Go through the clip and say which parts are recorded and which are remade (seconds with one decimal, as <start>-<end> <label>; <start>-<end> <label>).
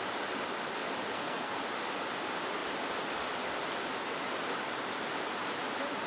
0.0-1.1 recorded; 1.1-1.6 remade; 1.6-6.1 recorded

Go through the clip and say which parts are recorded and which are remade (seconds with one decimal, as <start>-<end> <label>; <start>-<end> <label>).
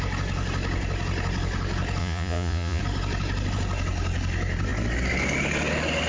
0.0-2.0 recorded; 2.0-2.8 remade; 2.8-6.1 recorded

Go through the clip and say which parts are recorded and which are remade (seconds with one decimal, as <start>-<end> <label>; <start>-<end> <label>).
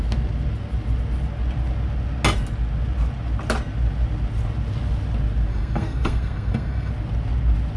0.0-5.5 recorded; 5.5-6.9 remade; 6.9-7.8 recorded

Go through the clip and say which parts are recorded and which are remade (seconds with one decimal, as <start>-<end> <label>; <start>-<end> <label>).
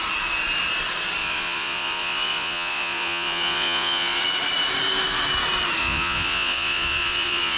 0.0-1.2 recorded; 1.2-4.2 remade; 4.2-5.8 recorded; 5.8-7.6 remade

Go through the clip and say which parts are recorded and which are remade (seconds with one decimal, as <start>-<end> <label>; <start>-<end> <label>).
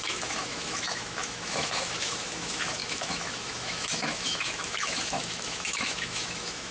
0.0-6.7 remade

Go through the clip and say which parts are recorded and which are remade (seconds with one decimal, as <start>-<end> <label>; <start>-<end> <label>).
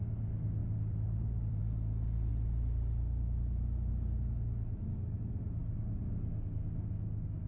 0.0-0.6 recorded; 0.6-1.6 remade; 1.6-2.3 recorded; 2.3-3.9 remade; 3.9-7.5 recorded